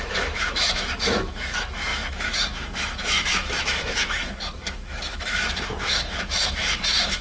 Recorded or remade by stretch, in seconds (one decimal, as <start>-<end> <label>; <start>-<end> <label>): 0.0-7.2 remade